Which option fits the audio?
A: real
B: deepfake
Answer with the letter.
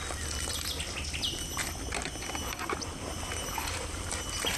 A